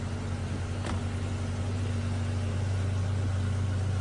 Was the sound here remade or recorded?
recorded